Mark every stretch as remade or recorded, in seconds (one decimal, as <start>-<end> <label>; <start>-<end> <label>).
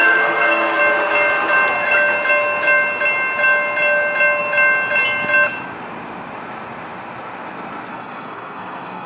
0.0-0.8 remade; 0.8-7.9 recorded; 7.9-9.1 remade